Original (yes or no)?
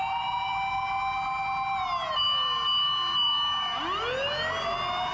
yes